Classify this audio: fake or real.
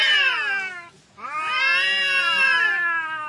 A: real